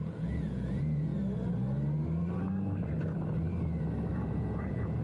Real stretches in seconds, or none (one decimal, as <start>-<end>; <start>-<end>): 1.1-4.1